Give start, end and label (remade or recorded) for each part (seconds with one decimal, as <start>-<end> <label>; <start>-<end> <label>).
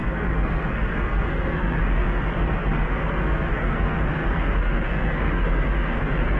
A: 0.0-6.4 remade